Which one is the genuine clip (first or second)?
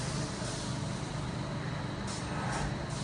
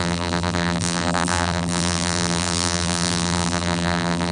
first